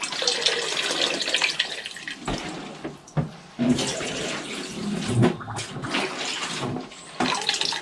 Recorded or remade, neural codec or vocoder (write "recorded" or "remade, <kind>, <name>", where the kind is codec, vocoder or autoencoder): recorded